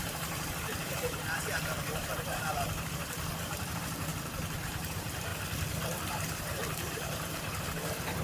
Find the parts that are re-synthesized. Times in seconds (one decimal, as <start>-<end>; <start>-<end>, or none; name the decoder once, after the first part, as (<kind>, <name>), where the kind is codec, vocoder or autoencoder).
0.0-4.1 (vocoder, BigVGAN v2); 4.6-5.3; 6.2-8.2